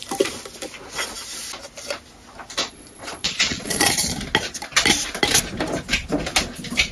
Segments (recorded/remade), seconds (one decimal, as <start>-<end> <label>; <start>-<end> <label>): 0.0-2.6 recorded; 2.6-3.9 remade; 3.9-6.9 recorded